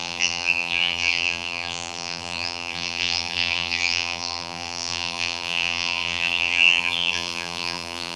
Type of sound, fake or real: fake